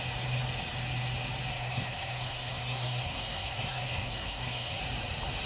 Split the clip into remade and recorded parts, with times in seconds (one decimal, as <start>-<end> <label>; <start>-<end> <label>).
0.0-1.5 recorded; 1.5-4.8 remade; 4.8-5.5 recorded